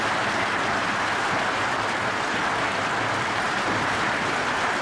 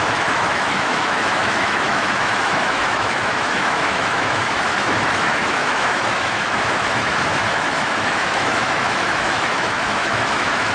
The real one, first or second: first